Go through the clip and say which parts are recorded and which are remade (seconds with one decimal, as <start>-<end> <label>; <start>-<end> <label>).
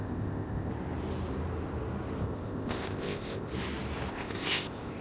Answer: 0.0-0.7 remade; 0.7-2.2 recorded; 2.2-3.5 remade; 3.5-4.1 recorded; 4.1-5.0 remade